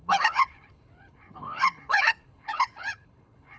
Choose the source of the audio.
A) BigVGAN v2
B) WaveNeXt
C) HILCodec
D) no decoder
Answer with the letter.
C